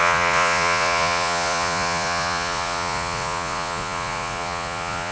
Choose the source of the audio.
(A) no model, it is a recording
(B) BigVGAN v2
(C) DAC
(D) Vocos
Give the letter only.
D